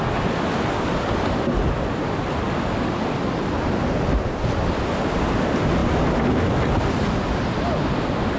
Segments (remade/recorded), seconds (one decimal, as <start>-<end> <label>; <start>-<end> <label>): 0.0-8.4 recorded